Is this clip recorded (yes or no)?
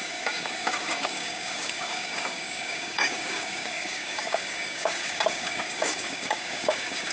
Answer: no